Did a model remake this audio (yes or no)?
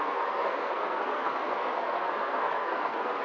yes